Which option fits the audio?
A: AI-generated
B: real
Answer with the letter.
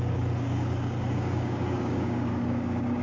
A